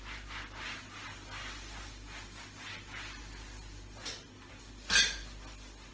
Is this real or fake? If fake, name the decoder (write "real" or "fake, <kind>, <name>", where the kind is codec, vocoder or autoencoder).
real